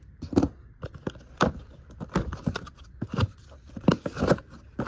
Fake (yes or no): no